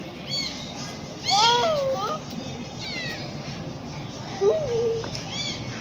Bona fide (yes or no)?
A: yes